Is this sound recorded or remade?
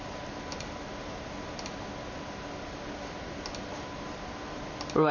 recorded